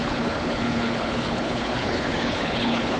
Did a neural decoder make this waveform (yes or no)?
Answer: yes